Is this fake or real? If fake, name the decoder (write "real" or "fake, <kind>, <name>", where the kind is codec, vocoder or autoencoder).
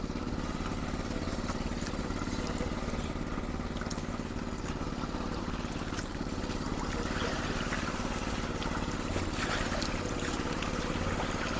real